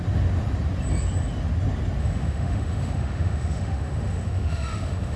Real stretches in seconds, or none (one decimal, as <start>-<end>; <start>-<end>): 0.0-2.0